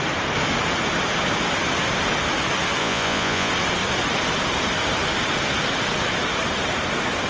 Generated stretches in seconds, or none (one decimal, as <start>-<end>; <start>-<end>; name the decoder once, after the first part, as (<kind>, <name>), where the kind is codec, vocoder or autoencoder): 2.8-3.5 (vocoder, Vocos)